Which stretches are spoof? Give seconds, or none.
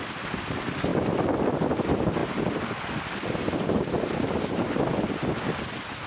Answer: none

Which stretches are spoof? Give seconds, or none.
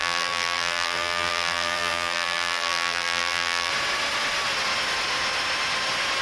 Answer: 0.0-3.7 (vocoder, BigVGAN v2)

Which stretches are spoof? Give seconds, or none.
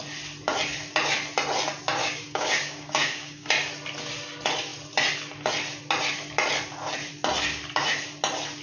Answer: 2.0-3.5 (codec, DAC)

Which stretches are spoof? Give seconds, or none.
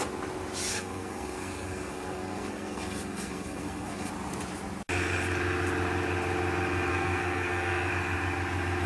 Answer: 0.7-4.1 (codec, SNAC); 6.9-7.9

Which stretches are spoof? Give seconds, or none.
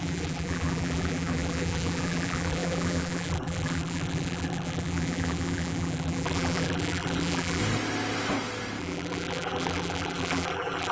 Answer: 0.0-7.6 (vocoder, BigVGAN v2); 8.8-10.9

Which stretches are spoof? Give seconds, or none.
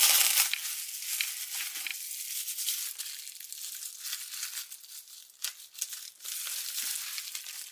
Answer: none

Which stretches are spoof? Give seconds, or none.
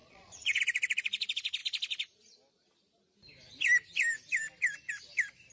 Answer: 0.0-0.6 (vocoder, Vocos)